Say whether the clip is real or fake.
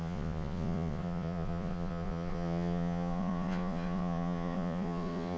fake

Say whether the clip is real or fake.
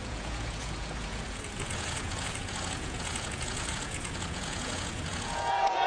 fake